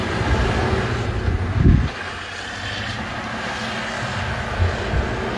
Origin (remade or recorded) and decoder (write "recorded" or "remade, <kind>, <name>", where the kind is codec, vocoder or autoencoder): recorded